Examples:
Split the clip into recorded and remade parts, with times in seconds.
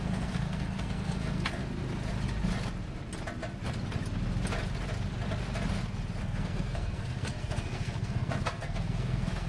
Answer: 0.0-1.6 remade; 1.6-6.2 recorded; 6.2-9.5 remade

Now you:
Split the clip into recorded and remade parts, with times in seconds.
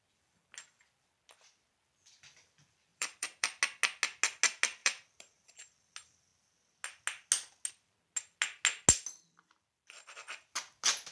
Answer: 0.0-2.9 recorded; 2.9-3.6 remade; 3.6-4.8 recorded; 4.8-5.5 remade; 5.5-11.1 recorded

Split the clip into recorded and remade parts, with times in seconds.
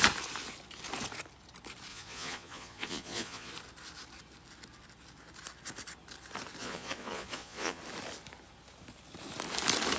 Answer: 0.0-1.9 recorded; 1.9-3.5 remade; 3.5-6.6 recorded; 6.6-7.8 remade; 7.8-10.0 recorded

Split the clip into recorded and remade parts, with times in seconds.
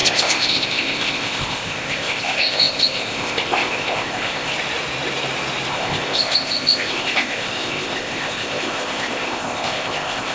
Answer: 0.0-4.5 remade; 4.5-5.7 recorded; 5.7-10.3 remade